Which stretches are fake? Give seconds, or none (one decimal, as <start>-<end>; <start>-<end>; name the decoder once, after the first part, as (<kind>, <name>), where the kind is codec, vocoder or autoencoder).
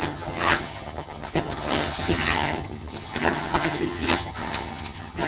0.0-5.3 (vocoder, HiFi-GAN)